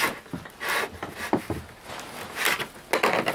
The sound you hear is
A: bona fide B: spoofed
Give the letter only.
A